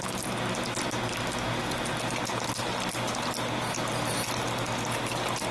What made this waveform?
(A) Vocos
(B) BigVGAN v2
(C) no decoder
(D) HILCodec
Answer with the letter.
C